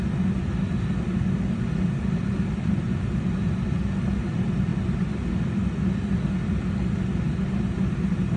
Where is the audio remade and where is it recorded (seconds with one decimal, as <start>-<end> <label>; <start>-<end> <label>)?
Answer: 0.0-8.4 recorded

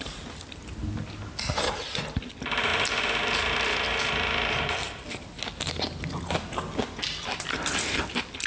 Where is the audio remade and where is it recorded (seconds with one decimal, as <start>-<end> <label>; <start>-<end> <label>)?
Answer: 0.0-8.5 recorded

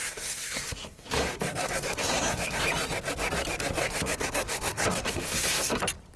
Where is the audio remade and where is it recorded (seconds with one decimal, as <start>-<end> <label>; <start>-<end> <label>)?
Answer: 0.0-2.6 remade; 2.6-3.8 recorded; 3.8-5.8 remade; 5.8-6.2 recorded

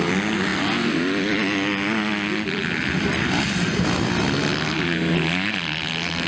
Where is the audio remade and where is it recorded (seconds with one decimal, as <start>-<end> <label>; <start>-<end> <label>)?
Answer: 0.0-6.3 recorded

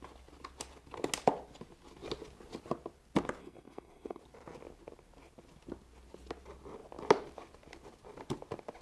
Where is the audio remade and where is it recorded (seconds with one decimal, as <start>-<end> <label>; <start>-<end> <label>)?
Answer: 0.0-3.4 recorded; 3.4-4.2 remade; 4.2-8.8 recorded